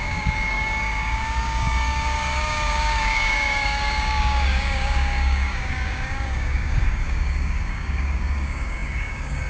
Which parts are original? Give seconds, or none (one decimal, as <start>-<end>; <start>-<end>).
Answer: none